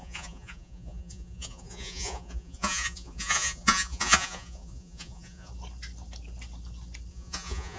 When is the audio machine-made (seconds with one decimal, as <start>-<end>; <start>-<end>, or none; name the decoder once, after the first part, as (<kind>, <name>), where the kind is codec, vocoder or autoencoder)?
0.0-5.5 (vocoder, Vocos); 7.1-7.8